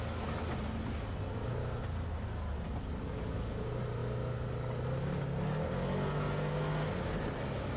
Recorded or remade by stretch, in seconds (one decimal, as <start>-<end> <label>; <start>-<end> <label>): 0.0-7.8 recorded